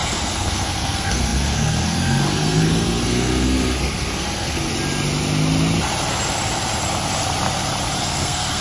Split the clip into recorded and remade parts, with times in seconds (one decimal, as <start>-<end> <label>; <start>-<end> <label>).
0.0-4.7 remade; 4.7-8.0 recorded; 8.0-8.6 remade